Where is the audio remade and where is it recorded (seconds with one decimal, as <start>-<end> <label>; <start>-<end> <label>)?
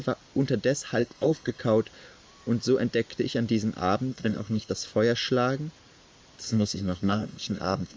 0.0-1.0 recorded; 1.0-1.6 remade; 1.6-4.1 recorded; 4.1-4.7 remade; 4.7-6.5 recorded; 6.5-8.0 remade